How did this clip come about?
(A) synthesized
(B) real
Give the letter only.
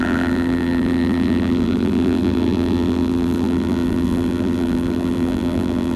A